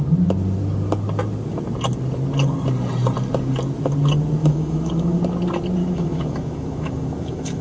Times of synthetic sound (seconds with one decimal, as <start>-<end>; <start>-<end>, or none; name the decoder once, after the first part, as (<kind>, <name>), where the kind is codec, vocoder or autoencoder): 4.4-5.2 (autoencoder, DAC-VAE); 5.8-7.6